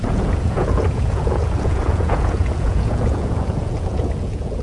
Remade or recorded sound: remade